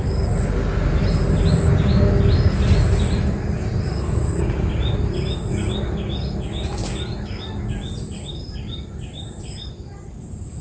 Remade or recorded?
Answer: recorded